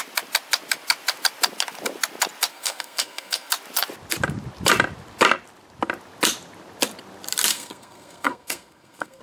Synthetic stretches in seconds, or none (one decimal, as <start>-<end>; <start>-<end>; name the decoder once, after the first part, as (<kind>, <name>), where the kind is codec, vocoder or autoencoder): 2.5-3.5 (codec, SNAC); 7.5-9.2